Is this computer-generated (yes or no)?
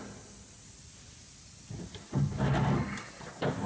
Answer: no